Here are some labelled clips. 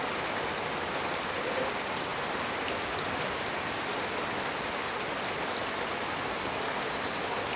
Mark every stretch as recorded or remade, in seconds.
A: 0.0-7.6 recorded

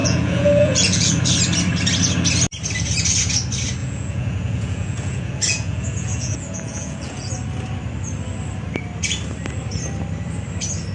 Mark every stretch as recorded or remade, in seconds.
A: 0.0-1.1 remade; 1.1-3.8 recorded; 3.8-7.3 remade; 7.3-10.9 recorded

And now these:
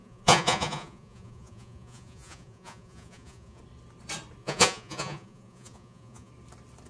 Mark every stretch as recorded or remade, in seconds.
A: 0.0-3.6 remade; 3.6-4.4 recorded; 4.4-6.3 remade; 6.3-6.9 recorded

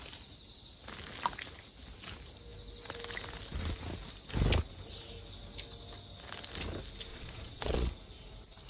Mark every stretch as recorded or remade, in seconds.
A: 0.0-7.1 recorded; 7.1-7.9 remade; 7.9-8.7 recorded

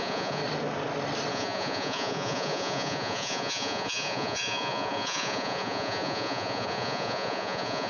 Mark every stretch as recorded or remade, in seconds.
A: 0.0-0.4 remade; 0.4-1.3 recorded; 1.3-7.9 remade